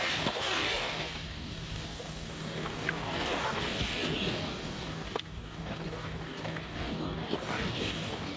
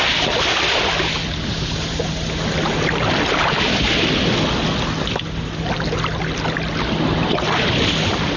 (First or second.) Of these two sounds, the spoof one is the first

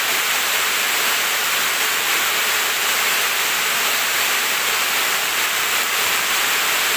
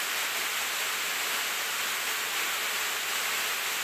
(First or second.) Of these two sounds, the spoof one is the first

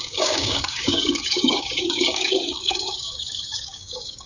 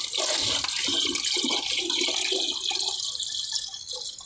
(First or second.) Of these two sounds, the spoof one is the first